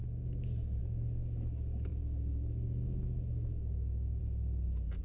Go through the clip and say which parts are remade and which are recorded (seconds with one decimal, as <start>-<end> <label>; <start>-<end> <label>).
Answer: 0.0-0.8 remade; 0.8-1.9 recorded; 1.9-4.2 remade; 4.2-5.0 recorded